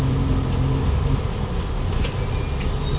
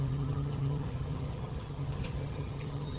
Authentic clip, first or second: first